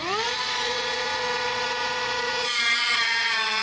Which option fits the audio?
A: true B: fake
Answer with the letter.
B